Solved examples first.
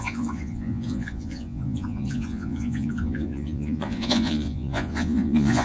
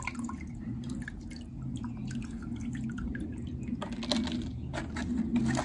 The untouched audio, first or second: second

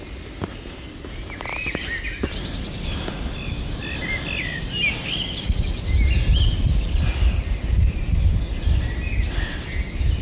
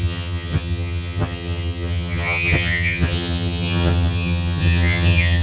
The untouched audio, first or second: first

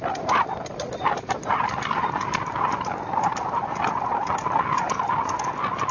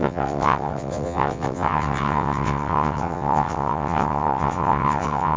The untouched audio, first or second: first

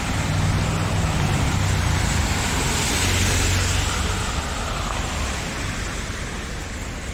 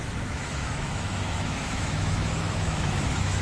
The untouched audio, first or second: first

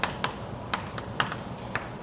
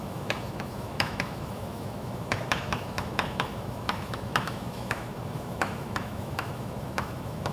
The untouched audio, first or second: first